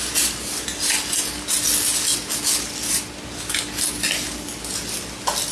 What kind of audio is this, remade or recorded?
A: recorded